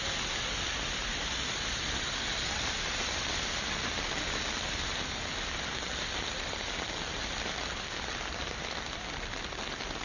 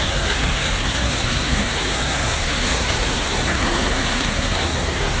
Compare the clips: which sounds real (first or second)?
first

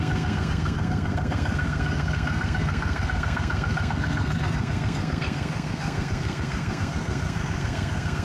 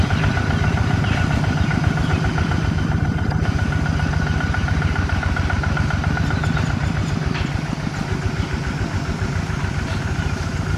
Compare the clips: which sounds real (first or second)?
second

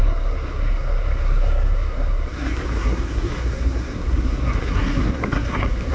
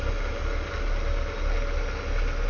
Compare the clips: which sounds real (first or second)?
second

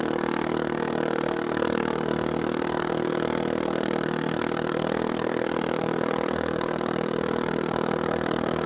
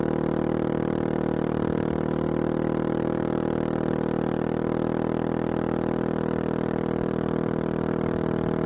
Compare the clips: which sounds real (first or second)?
second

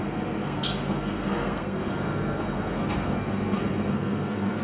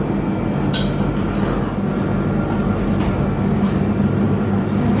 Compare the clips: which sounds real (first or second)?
second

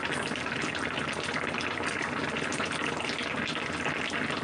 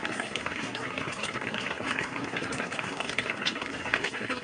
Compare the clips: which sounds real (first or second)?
first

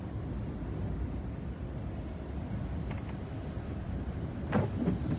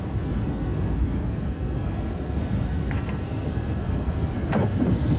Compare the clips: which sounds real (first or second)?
first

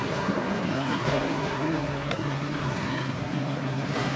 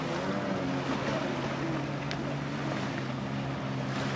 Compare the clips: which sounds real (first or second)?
second